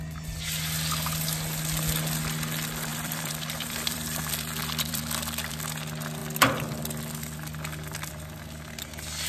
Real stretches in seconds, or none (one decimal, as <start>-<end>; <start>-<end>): 0.0-2.9; 5.5-9.3